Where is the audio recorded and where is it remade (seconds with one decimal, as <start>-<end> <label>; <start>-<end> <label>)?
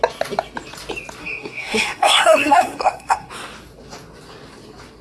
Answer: 0.0-1.2 recorded; 1.2-3.3 remade; 3.3-5.0 recorded